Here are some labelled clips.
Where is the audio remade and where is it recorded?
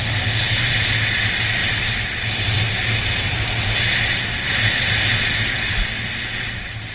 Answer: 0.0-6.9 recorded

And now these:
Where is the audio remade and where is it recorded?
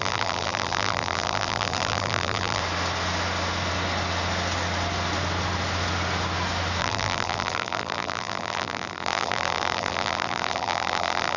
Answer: 0.0-2.6 remade; 2.6-6.8 recorded; 6.8-11.4 remade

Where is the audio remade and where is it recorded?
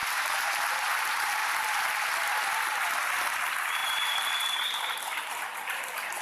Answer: 0.0-6.2 recorded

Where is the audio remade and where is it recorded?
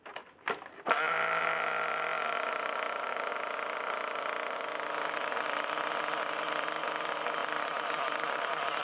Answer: 0.0-7.4 recorded; 7.4-8.8 remade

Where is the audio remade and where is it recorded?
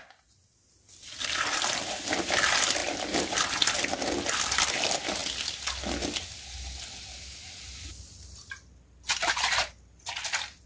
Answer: 0.0-2.8 remade; 2.8-4.3 recorded; 4.3-5.2 remade; 5.2-10.1 recorded; 10.1-10.7 remade